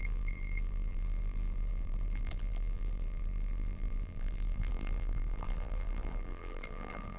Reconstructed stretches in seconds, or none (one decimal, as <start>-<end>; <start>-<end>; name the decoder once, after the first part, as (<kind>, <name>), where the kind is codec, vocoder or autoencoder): 0.0-7.2 (vocoder, BigVGAN v2)